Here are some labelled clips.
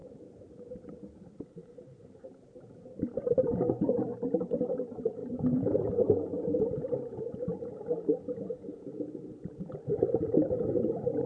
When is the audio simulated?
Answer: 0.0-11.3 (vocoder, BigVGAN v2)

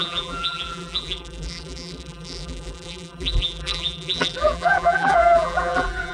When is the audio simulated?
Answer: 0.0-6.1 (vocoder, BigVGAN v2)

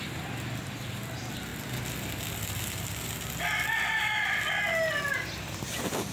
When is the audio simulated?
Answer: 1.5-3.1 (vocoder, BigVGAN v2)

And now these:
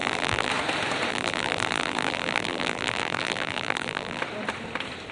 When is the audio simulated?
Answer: 0.0-0.5 (vocoder, BigVGAN v2); 1.1-4.2